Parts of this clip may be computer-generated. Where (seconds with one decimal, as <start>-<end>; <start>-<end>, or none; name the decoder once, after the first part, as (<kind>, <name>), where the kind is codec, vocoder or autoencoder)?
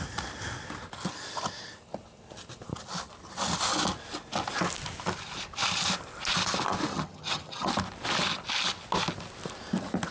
6.9-7.7 (vocoder, HiFi-GAN)